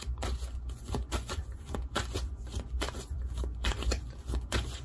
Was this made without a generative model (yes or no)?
no